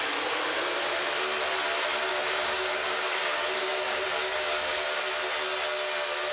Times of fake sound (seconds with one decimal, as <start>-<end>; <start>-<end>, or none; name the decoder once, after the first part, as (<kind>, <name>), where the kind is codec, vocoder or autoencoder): 2.1-5.0 (codec, DAC)